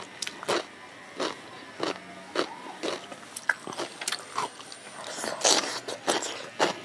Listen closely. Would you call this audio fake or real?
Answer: real